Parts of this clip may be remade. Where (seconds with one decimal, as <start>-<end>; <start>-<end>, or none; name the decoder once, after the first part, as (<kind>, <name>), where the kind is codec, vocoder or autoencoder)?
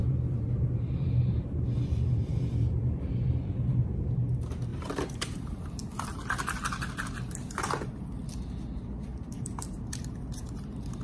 0.0-4.0 (vocoder, BigVGAN v2); 4.7-5.6; 9.1-10.0